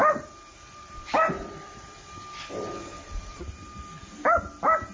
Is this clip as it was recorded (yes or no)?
no